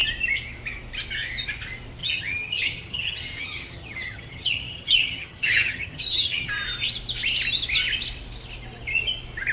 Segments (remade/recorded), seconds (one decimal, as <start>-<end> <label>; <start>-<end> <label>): 0.0-2.0 recorded; 2.0-6.5 remade; 6.5-9.5 recorded